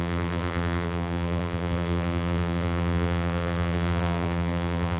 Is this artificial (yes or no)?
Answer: yes